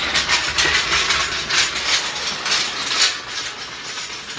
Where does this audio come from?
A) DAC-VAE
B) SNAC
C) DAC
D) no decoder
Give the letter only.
D